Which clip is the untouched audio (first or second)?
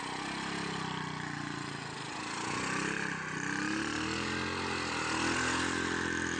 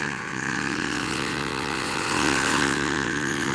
first